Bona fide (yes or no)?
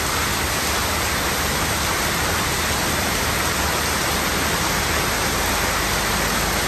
yes